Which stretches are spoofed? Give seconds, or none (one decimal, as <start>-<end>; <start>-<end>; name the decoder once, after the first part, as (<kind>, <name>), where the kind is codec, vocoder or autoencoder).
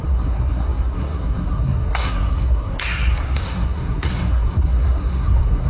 0.0-5.7 (codec, SNAC)